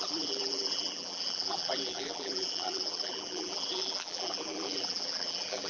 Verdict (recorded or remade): remade